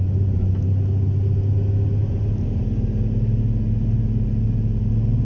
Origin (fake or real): real